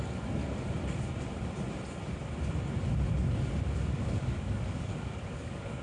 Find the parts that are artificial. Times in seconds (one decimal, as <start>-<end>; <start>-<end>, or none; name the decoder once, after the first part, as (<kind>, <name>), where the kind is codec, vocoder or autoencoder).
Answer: 0.0-0.4 (codec, DAC); 3.9-5.8